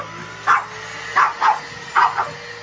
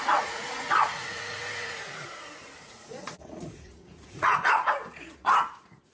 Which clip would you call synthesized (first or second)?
second